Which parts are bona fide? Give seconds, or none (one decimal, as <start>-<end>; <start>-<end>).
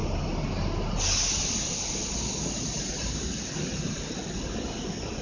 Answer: 0.0-5.2